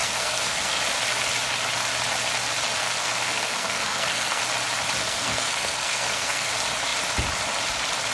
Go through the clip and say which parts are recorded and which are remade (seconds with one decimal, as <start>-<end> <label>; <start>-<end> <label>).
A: 0.0-0.8 remade; 0.8-2.8 recorded; 2.8-4.4 remade; 4.4-5.0 recorded; 5.0-6.5 remade; 6.5-8.1 recorded